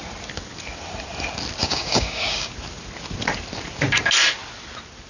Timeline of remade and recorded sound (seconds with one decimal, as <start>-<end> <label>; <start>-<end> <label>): 0.0-1.6 recorded; 1.6-2.5 remade; 2.5-5.1 recorded